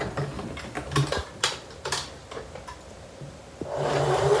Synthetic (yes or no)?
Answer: no